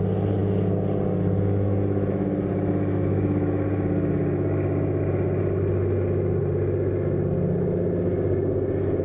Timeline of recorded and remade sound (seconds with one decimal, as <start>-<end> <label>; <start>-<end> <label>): 0.0-9.0 recorded